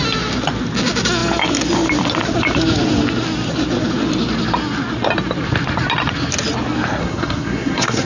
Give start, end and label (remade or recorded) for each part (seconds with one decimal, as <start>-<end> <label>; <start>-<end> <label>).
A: 0.0-7.0 recorded; 7.0-8.1 remade